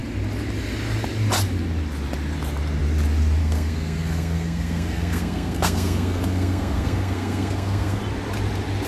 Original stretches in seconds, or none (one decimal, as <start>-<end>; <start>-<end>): 0.0-3.4; 8.0-8.9